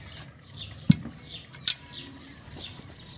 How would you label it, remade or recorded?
recorded